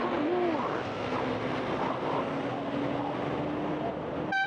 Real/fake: real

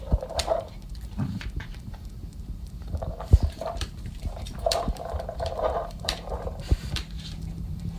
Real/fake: fake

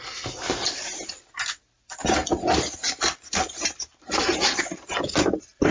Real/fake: real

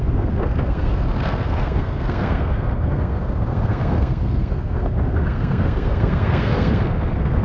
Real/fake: fake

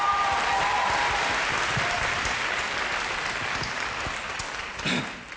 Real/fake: real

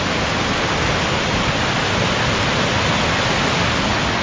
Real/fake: real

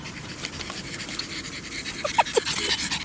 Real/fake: real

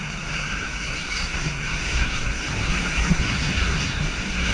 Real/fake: fake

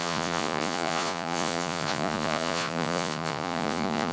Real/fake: fake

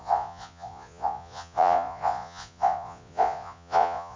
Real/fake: fake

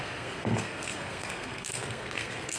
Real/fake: fake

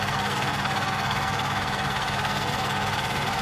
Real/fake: fake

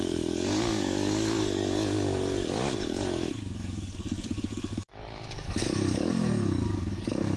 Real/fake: fake